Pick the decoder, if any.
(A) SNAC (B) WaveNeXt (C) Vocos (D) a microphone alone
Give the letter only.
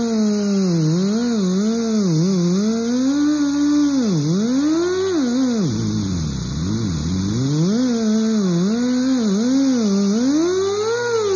D